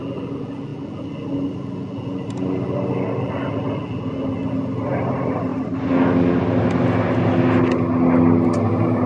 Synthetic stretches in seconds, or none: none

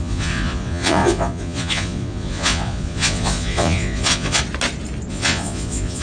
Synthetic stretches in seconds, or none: 0.0-4.4 (vocoder, Vocos); 5.1-6.0

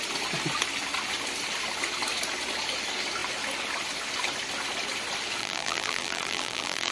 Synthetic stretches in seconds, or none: 5.4-6.9 (vocoder, BigVGAN v2)

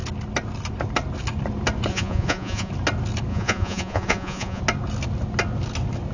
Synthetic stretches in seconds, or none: 1.9-2.7 (vocoder, Vocos); 3.3-4.6

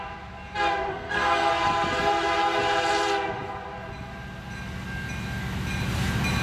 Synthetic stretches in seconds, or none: 0.9-1.5 (codec, SNAC)

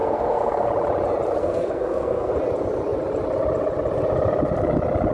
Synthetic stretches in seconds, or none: 0.0-0.7 (codec, SNAC); 1.4-2.3